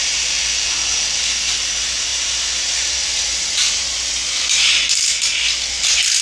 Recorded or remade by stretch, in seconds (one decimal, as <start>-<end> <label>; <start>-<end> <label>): 0.0-2.1 recorded; 2.1-3.8 remade; 3.8-6.2 recorded